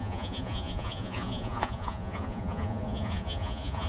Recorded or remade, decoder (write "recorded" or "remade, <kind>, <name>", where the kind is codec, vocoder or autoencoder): remade, vocoder, Vocos